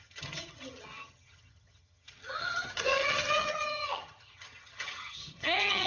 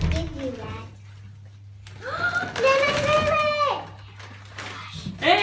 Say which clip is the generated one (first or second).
first